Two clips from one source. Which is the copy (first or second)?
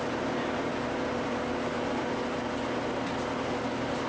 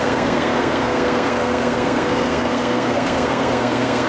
second